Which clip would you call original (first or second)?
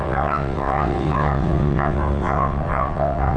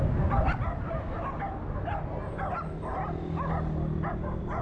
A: second